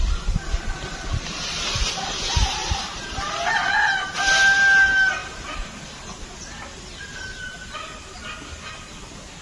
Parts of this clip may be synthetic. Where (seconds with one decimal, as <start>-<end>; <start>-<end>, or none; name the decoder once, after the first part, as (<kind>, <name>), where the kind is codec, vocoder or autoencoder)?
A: 2.6-3.2 (vocoder, BigVGAN v2)